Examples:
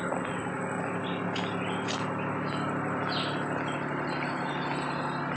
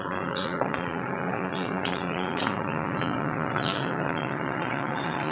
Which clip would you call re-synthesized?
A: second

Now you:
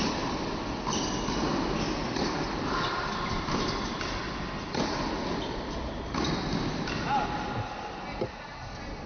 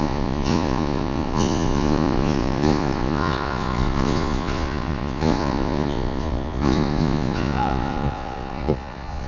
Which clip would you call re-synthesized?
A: second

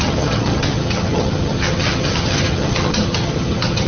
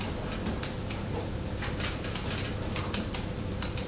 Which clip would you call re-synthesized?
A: first